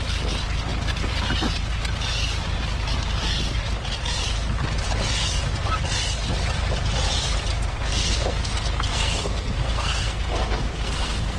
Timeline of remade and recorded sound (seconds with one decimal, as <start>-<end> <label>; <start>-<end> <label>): 0.0-7.7 recorded; 7.7-11.4 remade